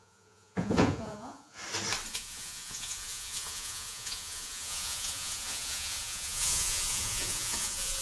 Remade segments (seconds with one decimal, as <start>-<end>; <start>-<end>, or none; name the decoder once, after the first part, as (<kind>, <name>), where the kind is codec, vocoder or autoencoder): 0.0-1.6 (vocoder, Vocos); 2.1-8.0

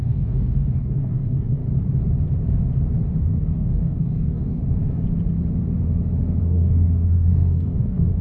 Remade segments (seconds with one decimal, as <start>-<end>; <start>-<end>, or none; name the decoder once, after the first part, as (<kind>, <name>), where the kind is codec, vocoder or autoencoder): 0.0-1.6 (codec, DAC); 3.2-4.6; 6.4-8.2

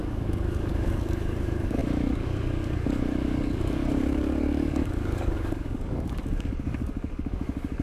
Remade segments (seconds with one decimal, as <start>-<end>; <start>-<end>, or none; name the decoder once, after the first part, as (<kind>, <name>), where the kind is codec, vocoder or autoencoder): 0.0-7.8 (codec, DAC)

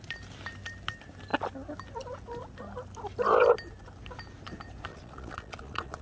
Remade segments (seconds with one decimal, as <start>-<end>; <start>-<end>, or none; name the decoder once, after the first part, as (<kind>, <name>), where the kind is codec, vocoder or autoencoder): 4.9-6.0 (vocoder, Vocos)

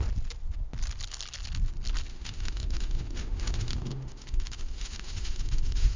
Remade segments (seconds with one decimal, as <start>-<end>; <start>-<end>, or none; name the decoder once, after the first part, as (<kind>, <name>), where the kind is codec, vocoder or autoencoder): 2.1-6.0 (autoencoder, DAC-VAE)

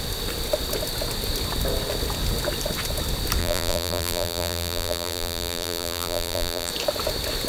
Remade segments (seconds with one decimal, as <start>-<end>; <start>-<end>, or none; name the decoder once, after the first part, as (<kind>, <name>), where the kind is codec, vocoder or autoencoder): 3.4-6.7 (vocoder, BigVGAN v2)

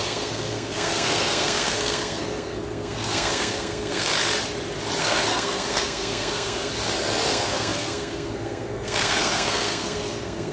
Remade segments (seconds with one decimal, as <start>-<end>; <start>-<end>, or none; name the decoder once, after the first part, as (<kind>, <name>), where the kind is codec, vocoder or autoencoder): 0.0-4.1 (codec, SNAC); 5.0-6.7; 7.3-10.5

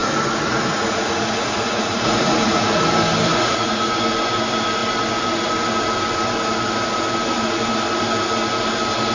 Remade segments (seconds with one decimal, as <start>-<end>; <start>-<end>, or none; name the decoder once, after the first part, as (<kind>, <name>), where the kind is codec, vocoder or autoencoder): 0.0-2.9 (vocoder, Vocos); 3.3-3.9